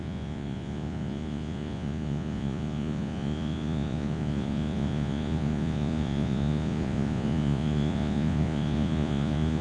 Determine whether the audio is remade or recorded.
remade